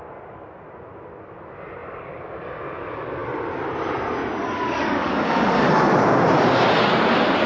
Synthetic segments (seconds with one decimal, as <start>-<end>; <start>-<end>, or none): 4.4-5.7